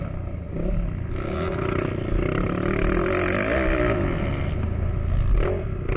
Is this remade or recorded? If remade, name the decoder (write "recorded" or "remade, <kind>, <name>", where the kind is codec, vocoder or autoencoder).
recorded